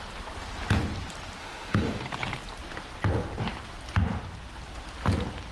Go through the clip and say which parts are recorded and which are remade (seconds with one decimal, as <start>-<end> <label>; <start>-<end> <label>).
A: 0.0-1.4 recorded; 1.4-2.0 remade; 2.0-5.5 recorded